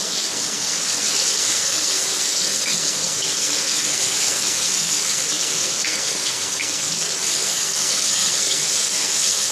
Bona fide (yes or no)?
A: no